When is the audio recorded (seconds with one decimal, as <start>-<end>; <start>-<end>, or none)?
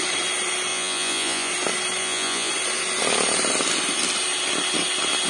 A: 0.0-0.7; 1.5-2.0; 2.5-5.3